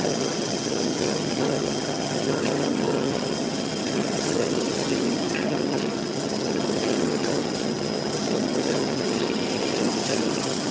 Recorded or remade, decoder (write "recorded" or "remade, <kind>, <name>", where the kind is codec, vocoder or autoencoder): remade, vocoder, HiFi-GAN